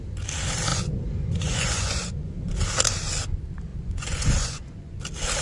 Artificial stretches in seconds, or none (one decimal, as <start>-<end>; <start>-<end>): 0.7-2.4; 3.7-5.0